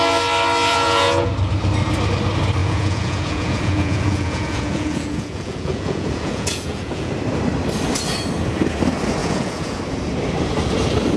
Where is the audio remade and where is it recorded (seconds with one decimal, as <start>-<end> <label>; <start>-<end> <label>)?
0.0-0.7 recorded; 0.7-1.3 remade; 1.3-2.6 recorded; 2.6-7.1 remade; 7.1-9.2 recorded; 9.2-9.8 remade; 9.8-11.2 recorded